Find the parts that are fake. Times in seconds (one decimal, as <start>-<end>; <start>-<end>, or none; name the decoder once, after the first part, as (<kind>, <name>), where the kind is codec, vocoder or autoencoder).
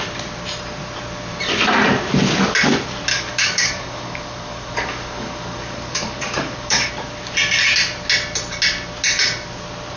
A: 3.1-6.9 (codec, DAC)